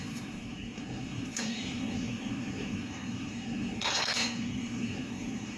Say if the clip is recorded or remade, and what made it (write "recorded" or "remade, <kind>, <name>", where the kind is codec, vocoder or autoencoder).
remade, codec, SNAC